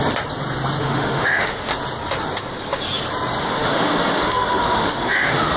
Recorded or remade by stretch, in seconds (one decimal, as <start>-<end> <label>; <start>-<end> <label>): 0.0-0.8 recorded; 0.8-1.7 remade; 1.7-3.4 recorded; 3.4-5.6 remade